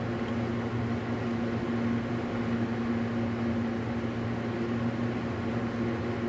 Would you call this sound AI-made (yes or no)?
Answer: no